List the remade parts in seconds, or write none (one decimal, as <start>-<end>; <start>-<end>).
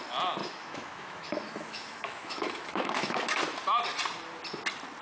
0.4-3.4